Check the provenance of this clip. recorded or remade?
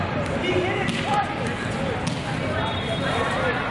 recorded